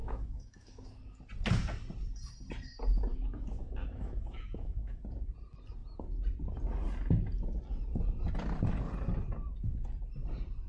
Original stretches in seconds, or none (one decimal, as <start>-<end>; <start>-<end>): 1.2-3.1; 5.0-10.7